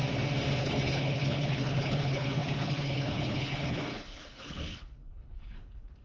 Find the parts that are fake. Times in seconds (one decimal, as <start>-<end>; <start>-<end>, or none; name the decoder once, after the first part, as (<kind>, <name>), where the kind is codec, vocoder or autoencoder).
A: 0.6-6.0 (codec, HILCodec)